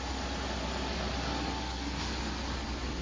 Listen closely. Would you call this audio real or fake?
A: real